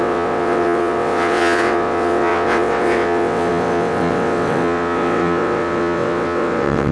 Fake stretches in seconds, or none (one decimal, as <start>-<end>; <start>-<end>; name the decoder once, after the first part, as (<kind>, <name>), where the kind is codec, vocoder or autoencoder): 0.0-6.9 (vocoder, WaveNeXt)